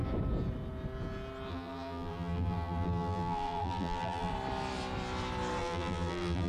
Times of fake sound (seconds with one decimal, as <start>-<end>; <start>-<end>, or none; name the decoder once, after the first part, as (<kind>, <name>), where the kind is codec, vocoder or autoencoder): 1.5-4.3 (vocoder, BigVGAN v2); 5.6-6.5